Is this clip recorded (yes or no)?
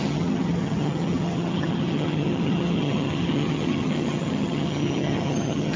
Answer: no